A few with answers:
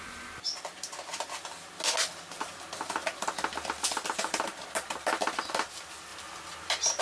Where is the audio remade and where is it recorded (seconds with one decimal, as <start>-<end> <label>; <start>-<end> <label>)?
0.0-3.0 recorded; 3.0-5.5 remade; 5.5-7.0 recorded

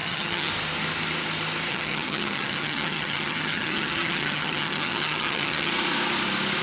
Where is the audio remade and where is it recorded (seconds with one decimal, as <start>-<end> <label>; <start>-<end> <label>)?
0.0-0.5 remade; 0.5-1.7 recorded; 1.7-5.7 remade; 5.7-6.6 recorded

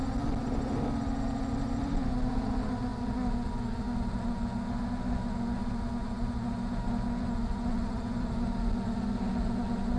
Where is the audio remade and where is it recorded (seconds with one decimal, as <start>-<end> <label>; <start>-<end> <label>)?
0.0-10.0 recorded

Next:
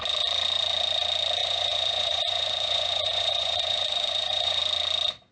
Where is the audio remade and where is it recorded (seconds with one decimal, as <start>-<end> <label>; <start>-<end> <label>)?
0.0-1.4 recorded; 1.4-4.6 remade; 4.6-5.3 recorded

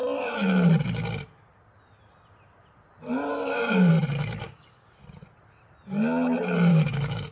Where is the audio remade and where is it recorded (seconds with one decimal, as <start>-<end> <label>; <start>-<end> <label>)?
0.0-3.3 recorded; 3.3-3.9 remade; 3.9-4.4 recorded; 4.4-4.9 remade; 4.9-6.7 recorded; 6.7-7.3 remade

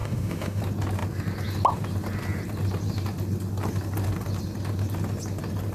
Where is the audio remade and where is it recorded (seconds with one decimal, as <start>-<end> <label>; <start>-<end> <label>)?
0.0-0.6 remade; 0.6-5.7 recorded

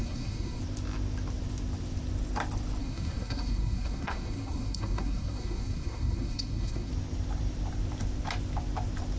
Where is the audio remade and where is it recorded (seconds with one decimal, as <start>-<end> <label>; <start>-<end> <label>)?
0.0-0.6 remade; 0.6-2.8 recorded; 2.8-6.9 remade; 6.9-9.2 recorded

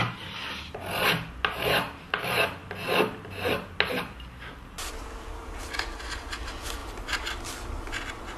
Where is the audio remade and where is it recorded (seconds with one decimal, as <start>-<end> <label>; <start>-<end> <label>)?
0.0-6.8 recorded; 6.8-7.4 remade; 7.4-8.4 recorded